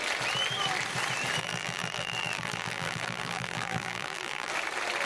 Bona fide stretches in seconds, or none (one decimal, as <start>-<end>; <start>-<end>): 0.0-1.4; 4.5-5.1